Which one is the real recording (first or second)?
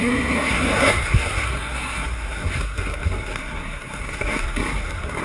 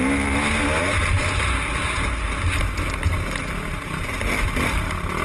second